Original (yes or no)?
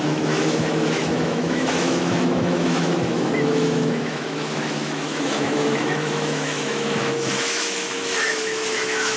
no